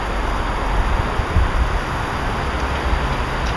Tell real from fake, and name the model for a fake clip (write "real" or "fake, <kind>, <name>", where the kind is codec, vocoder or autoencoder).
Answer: real